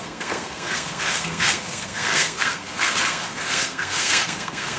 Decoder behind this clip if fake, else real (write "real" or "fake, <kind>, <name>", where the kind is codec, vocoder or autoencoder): fake, codec, SNAC